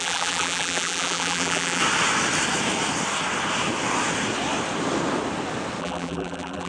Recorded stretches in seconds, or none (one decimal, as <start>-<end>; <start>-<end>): 1.8-5.8